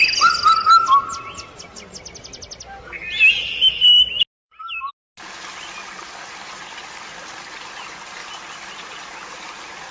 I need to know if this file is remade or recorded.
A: recorded